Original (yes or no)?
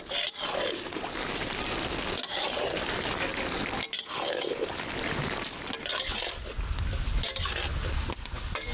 yes